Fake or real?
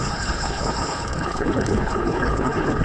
fake